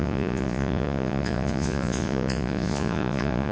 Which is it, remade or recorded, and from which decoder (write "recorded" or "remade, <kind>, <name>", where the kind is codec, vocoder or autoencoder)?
remade, vocoder, Vocos